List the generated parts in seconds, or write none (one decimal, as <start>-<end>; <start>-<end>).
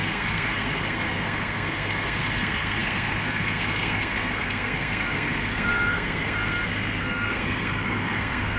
0.0-8.6